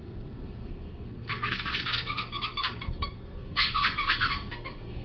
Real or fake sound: fake